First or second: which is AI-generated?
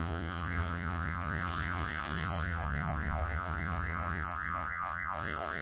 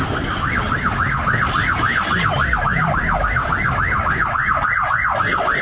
first